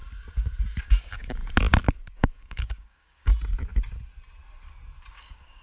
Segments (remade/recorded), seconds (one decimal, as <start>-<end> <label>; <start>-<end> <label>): 0.0-0.8 recorded; 0.8-1.4 remade; 1.4-2.2 recorded; 2.2-3.3 remade; 3.3-5.1 recorded; 5.1-5.6 remade